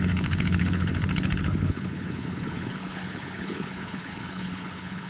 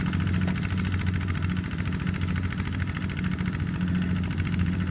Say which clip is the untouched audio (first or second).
second